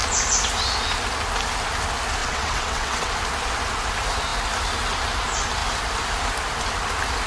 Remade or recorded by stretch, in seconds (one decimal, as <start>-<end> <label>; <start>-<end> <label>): 0.0-2.2 recorded; 2.2-3.1 remade; 3.1-7.3 recorded